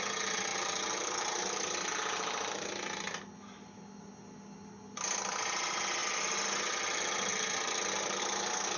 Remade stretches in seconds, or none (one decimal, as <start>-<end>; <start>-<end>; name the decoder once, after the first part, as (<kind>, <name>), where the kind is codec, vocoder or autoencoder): none